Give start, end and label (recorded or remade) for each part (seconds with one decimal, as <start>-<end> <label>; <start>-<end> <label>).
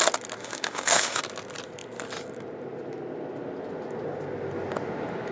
0.0-0.4 recorded; 0.4-1.2 remade; 1.2-5.3 recorded